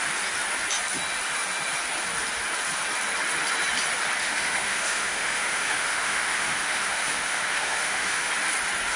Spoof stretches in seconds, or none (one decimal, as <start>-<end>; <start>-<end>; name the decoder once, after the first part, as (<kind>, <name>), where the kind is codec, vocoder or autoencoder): 4.2-8.3 (autoencoder, DAC-VAE)